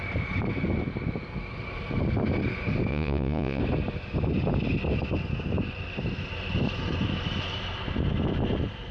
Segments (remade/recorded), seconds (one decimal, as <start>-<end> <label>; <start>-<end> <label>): 0.0-2.9 recorded; 2.9-3.6 remade; 3.6-8.9 recorded